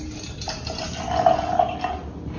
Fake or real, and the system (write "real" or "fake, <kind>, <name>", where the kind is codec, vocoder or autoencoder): real